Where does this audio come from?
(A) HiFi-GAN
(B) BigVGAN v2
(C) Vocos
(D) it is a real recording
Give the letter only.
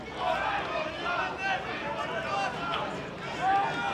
D